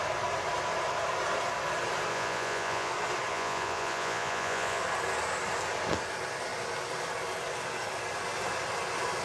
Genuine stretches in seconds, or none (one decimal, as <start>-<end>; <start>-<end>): 0.0-2.1; 2.9-3.3; 4.8-9.2